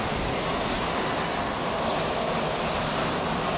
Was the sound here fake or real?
real